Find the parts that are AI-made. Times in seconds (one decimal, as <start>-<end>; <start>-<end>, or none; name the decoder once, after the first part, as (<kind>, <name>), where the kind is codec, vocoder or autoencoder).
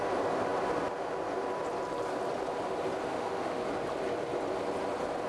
3.1-3.6 (autoencoder, DAC-VAE)